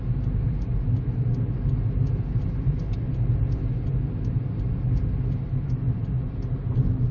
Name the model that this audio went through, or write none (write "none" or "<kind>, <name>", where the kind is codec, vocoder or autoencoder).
none